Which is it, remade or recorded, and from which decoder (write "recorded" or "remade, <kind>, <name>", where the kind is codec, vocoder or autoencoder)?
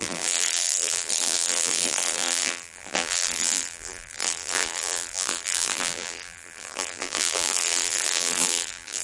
remade, vocoder, BigVGAN v2